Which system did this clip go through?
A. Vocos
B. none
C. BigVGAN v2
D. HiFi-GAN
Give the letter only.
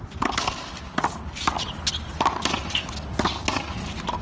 B